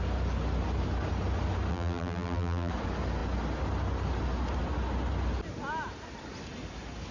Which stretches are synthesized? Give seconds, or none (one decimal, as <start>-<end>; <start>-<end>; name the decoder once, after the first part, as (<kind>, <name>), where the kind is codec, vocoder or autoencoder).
1.7-2.7 (vocoder, BigVGAN v2)